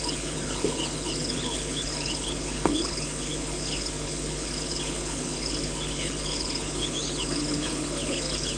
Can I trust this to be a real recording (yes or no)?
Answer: no